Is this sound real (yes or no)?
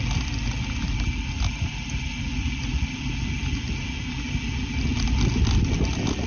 yes